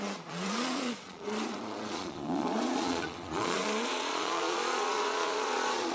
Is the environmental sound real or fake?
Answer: fake